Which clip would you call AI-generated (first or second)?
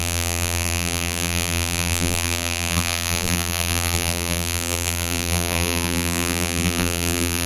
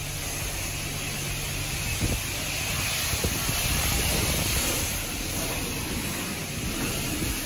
first